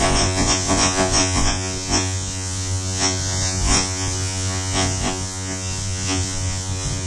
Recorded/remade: remade